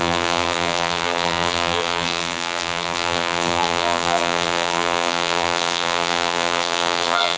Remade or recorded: remade